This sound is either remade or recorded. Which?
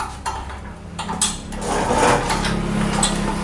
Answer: recorded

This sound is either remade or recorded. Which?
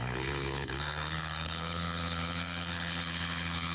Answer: remade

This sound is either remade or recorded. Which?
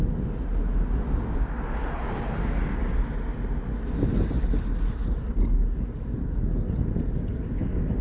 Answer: recorded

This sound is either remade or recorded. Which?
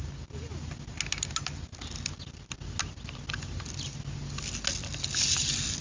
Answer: recorded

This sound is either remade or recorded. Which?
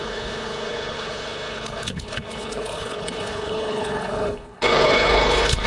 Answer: remade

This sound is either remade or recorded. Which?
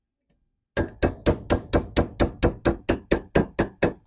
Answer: recorded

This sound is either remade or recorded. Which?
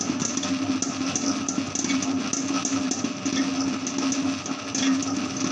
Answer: recorded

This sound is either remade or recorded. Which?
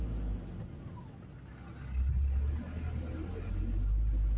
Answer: recorded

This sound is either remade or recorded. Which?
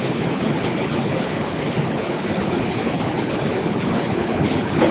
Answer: remade